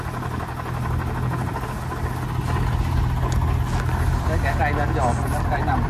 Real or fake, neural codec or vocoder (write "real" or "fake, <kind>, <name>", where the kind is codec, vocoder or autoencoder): real